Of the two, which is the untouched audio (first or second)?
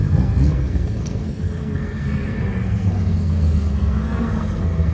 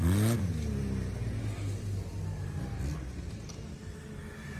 second